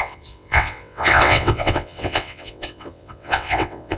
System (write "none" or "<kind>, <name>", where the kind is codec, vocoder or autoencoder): vocoder, WaveNeXt